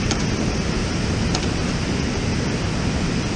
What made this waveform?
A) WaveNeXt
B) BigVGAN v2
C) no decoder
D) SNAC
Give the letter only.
B